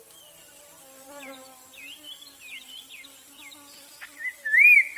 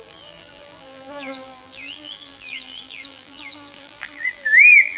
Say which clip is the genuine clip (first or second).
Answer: first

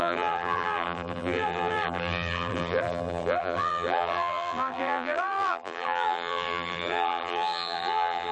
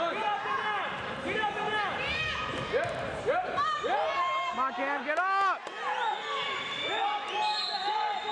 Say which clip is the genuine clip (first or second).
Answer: second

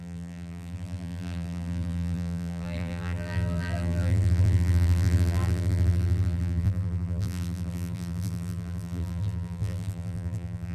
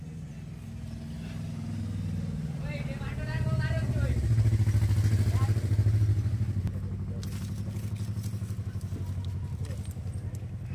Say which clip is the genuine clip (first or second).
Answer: second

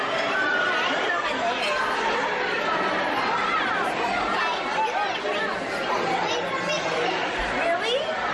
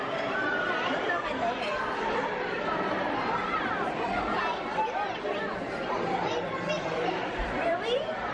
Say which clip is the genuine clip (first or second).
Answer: first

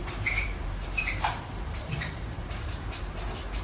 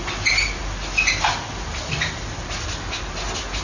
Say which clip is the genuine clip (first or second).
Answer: second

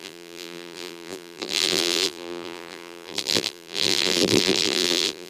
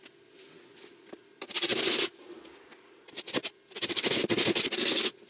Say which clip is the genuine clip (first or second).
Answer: second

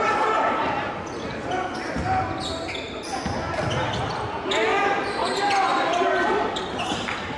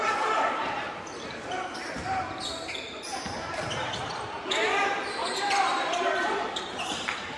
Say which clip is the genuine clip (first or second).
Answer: first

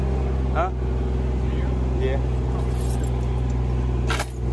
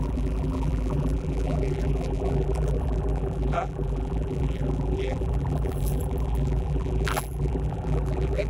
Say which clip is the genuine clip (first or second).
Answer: first